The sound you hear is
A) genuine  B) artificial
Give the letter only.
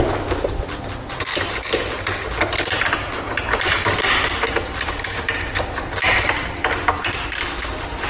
A